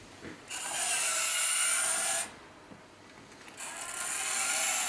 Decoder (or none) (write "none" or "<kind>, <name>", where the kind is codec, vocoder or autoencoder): none